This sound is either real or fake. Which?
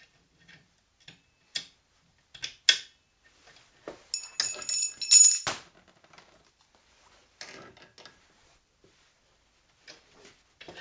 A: real